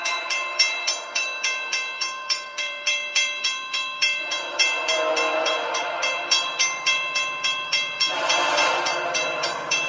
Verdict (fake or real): fake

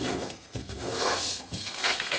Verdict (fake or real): fake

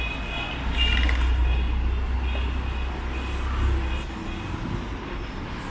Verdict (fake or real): real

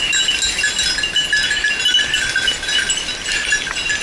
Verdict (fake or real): real